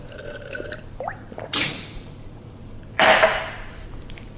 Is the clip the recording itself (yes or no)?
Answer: no